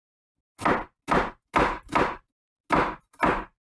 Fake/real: real